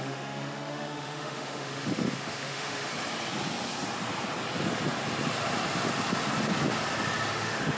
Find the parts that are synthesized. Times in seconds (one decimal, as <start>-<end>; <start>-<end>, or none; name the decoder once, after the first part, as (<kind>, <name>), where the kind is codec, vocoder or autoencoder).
0.0-2.9 (autoencoder, DAC-VAE); 7.3-7.8